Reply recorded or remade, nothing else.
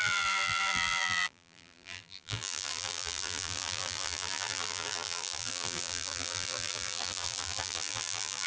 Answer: remade